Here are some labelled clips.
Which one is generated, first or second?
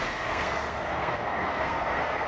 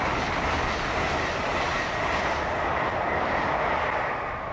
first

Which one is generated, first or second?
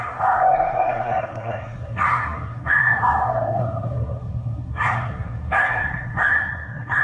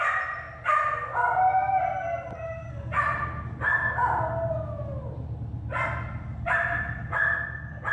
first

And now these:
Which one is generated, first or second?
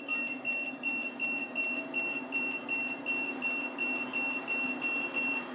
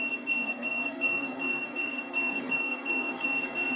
second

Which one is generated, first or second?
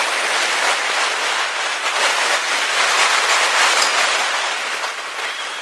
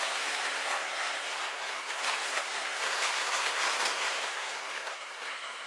second